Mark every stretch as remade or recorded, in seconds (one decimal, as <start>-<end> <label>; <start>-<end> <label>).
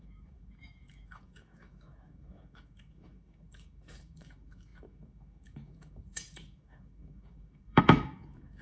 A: 0.0-8.6 remade